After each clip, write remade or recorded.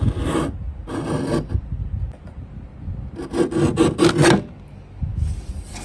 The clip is recorded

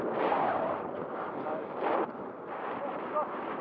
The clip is recorded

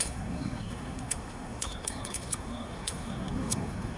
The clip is remade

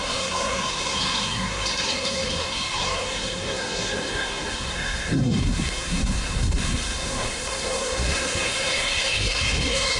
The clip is remade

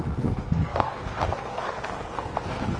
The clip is remade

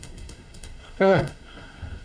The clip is remade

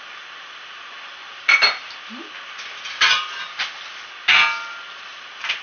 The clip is recorded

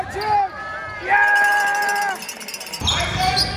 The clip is recorded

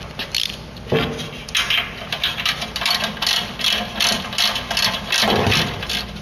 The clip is recorded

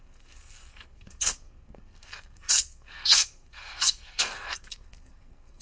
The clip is remade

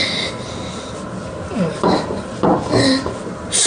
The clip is recorded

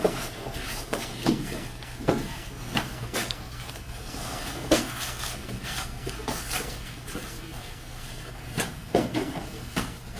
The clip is remade